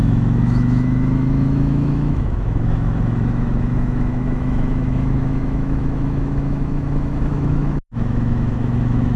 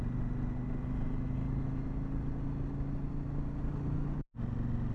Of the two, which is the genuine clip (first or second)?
second